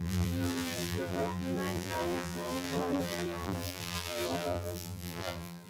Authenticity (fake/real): fake